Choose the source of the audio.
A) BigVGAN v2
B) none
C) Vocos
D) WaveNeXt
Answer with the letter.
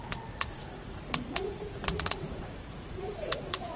C